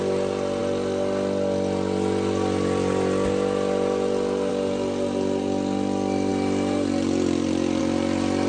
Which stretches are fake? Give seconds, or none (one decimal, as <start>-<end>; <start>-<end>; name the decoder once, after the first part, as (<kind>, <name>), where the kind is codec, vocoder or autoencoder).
none